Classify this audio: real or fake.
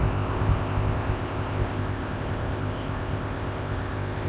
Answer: fake